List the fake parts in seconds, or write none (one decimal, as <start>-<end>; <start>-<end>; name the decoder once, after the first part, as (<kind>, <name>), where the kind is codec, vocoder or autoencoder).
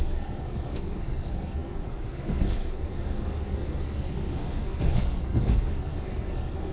0.0-6.7 (codec, SNAC)